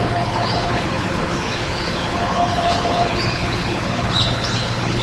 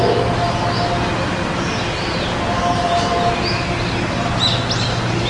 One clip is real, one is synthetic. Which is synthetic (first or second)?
first